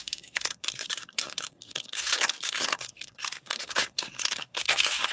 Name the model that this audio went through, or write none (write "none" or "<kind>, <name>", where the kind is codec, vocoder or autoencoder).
codec, SNAC